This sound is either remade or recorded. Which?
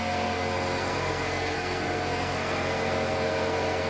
remade